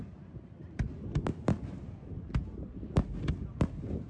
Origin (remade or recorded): recorded